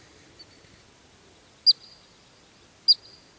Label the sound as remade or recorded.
recorded